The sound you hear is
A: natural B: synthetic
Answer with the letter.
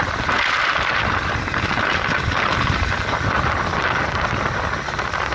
A